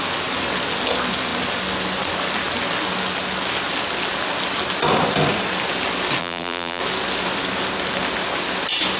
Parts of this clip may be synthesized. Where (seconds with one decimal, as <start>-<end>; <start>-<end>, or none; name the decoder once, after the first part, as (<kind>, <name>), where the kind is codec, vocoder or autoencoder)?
6.2-6.8 (vocoder, BigVGAN v2)